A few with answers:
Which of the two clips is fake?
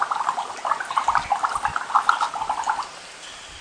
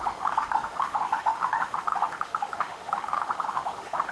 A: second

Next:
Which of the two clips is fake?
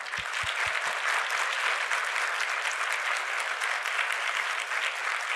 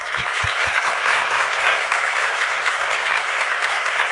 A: second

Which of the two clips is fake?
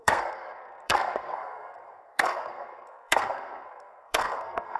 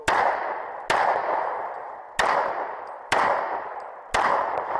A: first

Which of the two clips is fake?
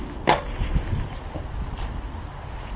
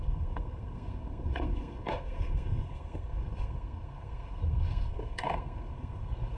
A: second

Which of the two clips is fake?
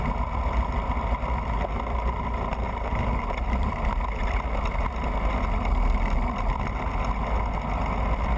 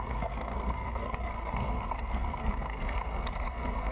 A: second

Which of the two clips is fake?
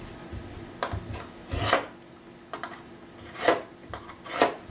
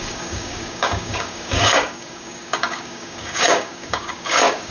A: second